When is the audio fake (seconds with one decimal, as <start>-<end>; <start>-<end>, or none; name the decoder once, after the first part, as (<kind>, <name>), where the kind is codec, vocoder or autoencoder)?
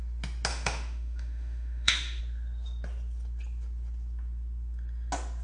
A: 0.5-2.2 (autoencoder, DAC-VAE)